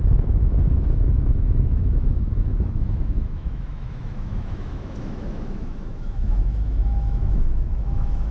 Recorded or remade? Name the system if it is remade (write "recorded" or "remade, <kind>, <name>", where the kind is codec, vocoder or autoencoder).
remade, autoencoder, DAC-VAE